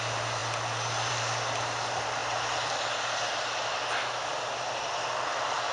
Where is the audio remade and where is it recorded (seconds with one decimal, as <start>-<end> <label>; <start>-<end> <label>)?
0.0-5.7 recorded